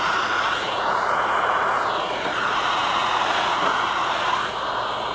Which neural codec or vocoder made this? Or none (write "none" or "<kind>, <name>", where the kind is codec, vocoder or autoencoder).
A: vocoder, Vocos